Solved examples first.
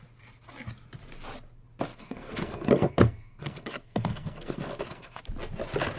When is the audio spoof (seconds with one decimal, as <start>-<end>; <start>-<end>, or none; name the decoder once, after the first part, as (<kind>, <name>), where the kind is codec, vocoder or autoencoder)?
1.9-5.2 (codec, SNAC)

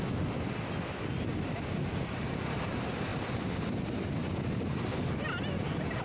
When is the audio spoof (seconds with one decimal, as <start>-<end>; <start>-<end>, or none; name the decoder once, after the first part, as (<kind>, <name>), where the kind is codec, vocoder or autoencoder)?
1.3-1.9 (vocoder, BigVGAN v2); 3.1-4.7

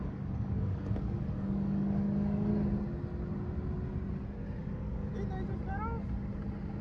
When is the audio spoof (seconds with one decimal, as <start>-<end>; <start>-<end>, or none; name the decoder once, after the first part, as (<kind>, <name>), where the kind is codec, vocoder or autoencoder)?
0.0-2.5 (codec, DAC); 4.6-5.1

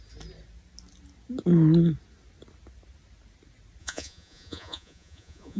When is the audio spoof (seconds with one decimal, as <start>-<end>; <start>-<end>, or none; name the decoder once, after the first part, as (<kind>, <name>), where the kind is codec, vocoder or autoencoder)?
3.8-5.6 (vocoder, Vocos)